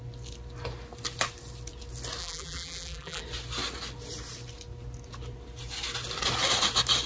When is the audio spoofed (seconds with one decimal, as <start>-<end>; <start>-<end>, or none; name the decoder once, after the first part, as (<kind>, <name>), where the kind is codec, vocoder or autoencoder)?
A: 2.2-3.2 (vocoder, BigVGAN v2)